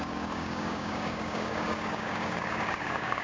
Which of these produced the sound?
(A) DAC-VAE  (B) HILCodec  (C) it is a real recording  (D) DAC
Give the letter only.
D